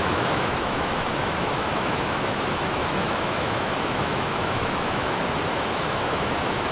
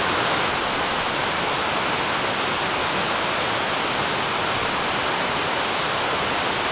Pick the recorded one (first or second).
second